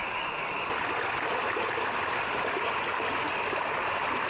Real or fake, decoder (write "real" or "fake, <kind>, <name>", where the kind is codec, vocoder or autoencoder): real